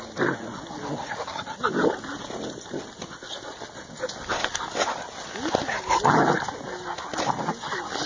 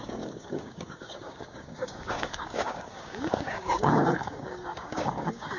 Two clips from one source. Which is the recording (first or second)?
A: first